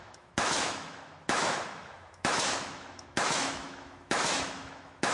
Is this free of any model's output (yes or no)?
no